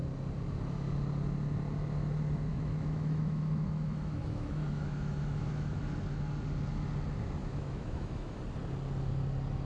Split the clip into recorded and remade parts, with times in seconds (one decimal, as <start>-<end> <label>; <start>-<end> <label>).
0.0-2.5 recorded; 2.5-5.8 remade; 5.8-7.4 recorded; 7.4-8.4 remade; 8.4-9.6 recorded